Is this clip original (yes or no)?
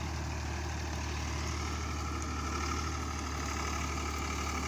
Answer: yes